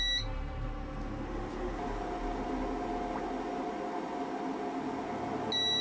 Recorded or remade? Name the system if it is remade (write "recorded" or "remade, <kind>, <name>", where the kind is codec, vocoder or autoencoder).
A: recorded